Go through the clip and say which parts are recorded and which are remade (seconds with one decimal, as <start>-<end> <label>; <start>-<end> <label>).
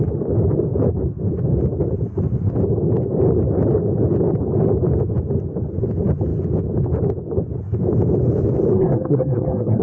0.0-8.7 recorded; 8.7-9.8 remade